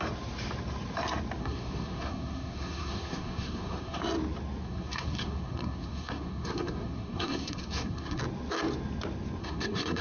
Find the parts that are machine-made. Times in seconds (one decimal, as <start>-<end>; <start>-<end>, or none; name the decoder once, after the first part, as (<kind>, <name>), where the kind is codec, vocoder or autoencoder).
1.4-4.0 (codec, SNAC); 4.6-8.2; 9.4-10.0